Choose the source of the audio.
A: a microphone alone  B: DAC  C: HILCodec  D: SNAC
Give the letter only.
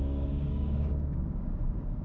B